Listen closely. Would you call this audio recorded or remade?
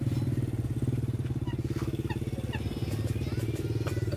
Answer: recorded